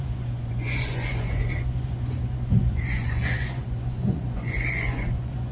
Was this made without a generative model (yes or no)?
no